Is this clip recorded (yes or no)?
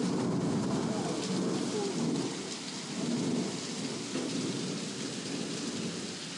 yes